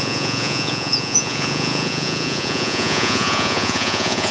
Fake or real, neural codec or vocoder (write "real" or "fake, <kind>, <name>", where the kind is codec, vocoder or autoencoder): fake, vocoder, Vocos